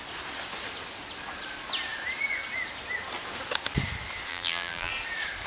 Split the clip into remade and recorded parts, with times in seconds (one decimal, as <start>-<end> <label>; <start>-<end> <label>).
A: 0.0-4.3 recorded; 4.3-4.9 remade; 4.9-5.5 recorded